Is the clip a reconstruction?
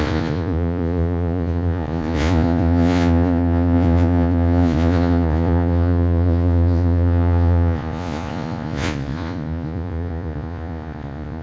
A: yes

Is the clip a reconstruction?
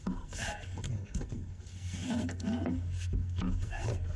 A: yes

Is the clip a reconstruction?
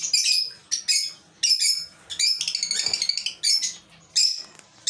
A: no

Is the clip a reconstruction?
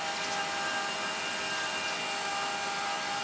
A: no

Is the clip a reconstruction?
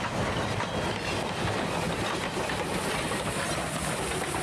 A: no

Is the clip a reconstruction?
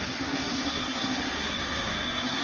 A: yes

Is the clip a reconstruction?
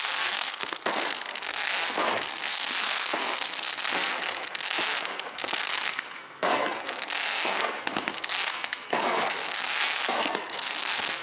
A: yes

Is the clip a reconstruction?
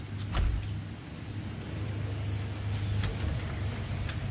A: no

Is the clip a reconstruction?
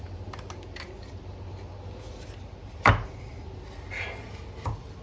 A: no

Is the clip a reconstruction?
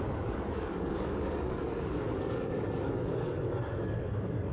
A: yes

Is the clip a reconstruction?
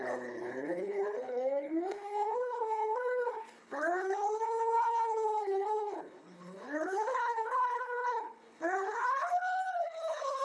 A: yes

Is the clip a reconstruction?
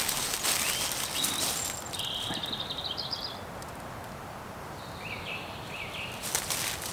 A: no